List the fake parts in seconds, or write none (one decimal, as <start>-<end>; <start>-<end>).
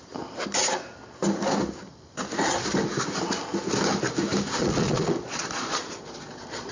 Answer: 4.6-6.7